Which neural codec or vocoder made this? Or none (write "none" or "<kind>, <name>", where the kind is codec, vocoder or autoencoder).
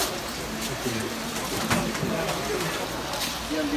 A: none